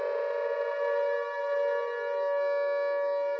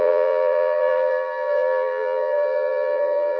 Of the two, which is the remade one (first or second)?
second